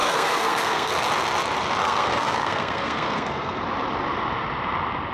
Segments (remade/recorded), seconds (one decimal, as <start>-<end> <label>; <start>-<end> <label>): 0.0-0.9 remade; 0.9-1.8 recorded; 1.8-3.6 remade; 3.6-5.1 recorded